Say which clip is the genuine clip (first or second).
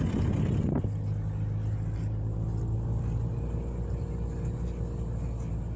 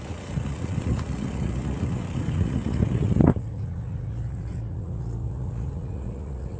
first